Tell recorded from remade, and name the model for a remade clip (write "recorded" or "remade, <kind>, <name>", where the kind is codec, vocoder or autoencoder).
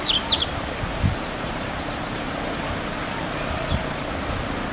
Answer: recorded